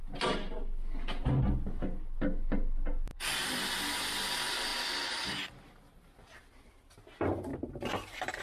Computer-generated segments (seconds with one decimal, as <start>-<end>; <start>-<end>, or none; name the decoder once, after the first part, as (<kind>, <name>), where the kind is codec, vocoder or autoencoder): 3.1-3.6 (vocoder, BigVGAN v2); 7.5-8.4